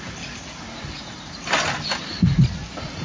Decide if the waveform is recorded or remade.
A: recorded